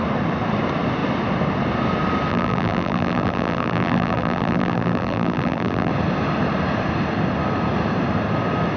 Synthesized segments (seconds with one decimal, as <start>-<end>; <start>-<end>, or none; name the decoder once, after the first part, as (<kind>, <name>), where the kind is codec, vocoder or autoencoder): 2.3-5.9 (vocoder, BigVGAN v2)